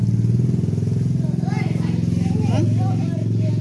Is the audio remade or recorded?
recorded